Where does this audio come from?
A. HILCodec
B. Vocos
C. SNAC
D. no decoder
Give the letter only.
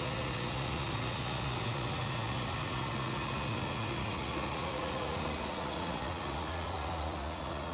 B